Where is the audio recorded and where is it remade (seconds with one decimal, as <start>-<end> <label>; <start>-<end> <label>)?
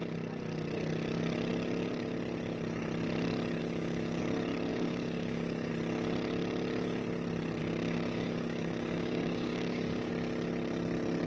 0.0-3.6 recorded; 3.6-4.2 remade; 4.2-4.7 recorded; 4.7-5.7 remade; 5.7-7.6 recorded; 7.6-10.1 remade; 10.1-11.3 recorded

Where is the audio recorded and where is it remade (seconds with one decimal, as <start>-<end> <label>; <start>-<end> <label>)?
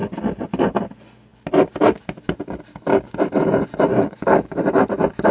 0.0-3.9 recorded; 3.9-4.6 remade; 4.6-5.3 recorded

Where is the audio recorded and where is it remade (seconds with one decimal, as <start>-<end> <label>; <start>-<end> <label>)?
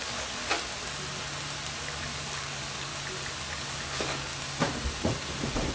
0.0-0.5 remade; 0.5-1.8 recorded; 1.8-2.9 remade; 2.9-3.4 recorded; 3.4-4.3 remade; 4.3-5.7 recorded